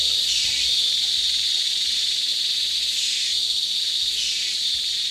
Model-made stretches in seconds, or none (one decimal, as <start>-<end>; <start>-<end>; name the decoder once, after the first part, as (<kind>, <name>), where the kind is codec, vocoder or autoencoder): 0.0-2.3 (vocoder, BigVGAN v2); 3.8-5.1